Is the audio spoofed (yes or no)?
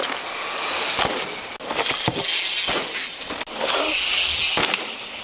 no